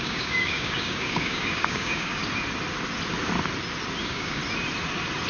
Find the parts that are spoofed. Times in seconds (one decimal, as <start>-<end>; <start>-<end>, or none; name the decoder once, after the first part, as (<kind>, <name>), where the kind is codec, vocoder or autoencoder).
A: 0.0-2.2 (codec, DAC); 4.0-4.4